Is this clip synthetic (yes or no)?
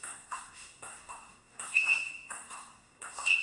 yes